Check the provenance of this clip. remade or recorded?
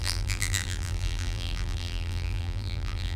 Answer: remade